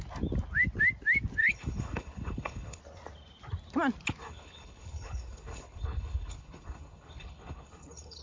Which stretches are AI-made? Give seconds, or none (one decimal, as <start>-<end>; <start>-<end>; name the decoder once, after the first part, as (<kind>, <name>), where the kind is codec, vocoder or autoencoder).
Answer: 1.4-2.8 (codec, HILCodec); 4.2-8.2